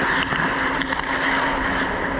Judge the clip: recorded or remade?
recorded